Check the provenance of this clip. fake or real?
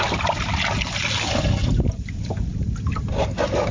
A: real